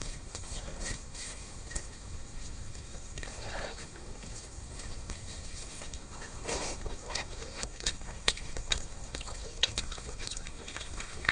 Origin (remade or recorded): remade